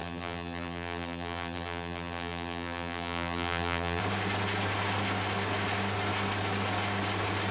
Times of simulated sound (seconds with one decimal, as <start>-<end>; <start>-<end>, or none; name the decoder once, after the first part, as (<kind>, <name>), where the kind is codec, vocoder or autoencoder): 0.0-4.0 (vocoder, BigVGAN v2)